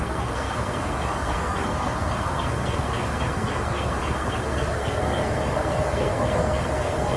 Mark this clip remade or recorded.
remade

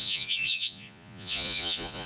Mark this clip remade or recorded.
remade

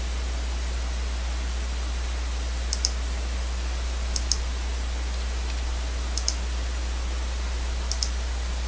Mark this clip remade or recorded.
recorded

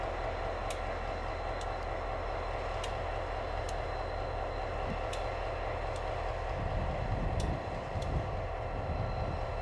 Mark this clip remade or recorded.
recorded